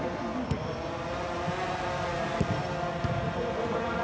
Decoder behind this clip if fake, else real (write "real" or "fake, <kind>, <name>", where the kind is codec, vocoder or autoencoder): real